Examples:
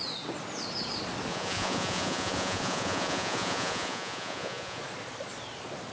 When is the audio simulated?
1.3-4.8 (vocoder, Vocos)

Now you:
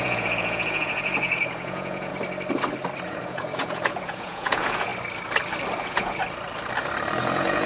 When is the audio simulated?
0.0-2.1 (vocoder, Vocos); 3.1-4.9; 5.8-6.2; 7.2-7.7

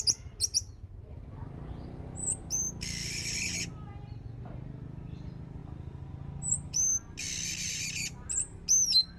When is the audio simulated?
none

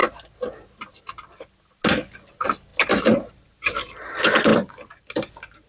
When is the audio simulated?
none

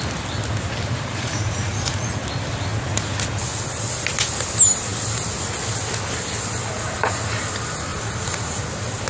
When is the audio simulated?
1.1-2.1 (vocoder, Vocos); 7.9-8.6

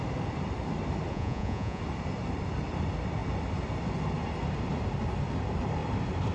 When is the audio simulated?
1.1-1.8 (vocoder, Vocos)

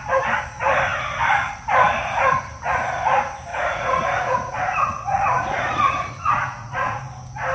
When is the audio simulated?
3.5-7.0 (vocoder, Vocos)

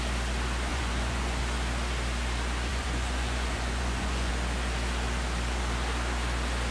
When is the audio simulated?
0.7-1.4 (vocoder, Vocos); 2.7-4.3